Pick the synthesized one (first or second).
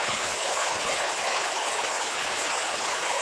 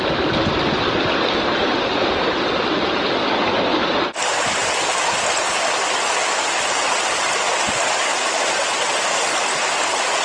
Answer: first